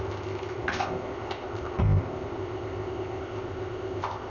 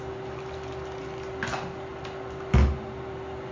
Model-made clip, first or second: first